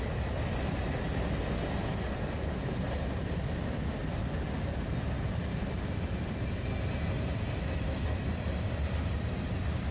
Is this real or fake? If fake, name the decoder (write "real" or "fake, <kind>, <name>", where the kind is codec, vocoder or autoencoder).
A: real